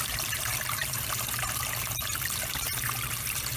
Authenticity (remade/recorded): remade